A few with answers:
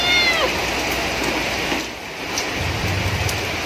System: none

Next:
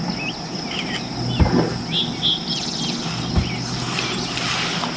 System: none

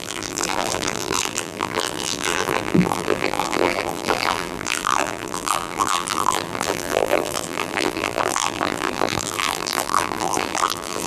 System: vocoder, BigVGAN v2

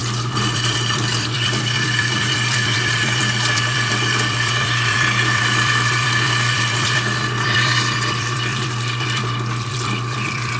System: vocoder, BigVGAN v2